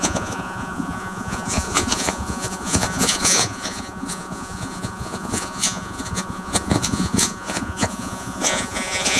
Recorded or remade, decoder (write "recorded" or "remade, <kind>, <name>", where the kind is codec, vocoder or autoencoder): remade, vocoder, Vocos